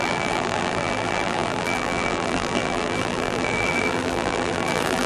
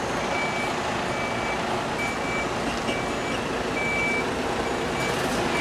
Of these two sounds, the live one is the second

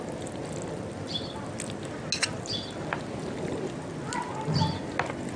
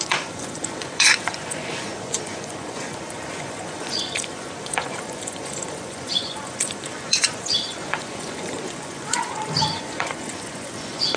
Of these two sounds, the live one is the first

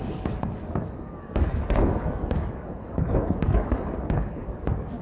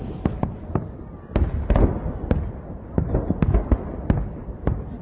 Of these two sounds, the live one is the second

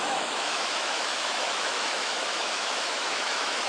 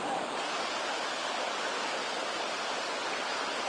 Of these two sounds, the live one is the second